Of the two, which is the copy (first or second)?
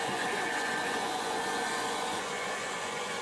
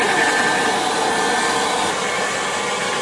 first